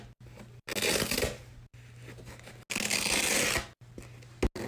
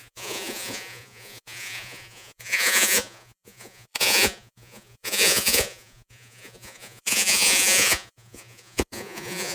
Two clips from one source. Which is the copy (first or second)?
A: second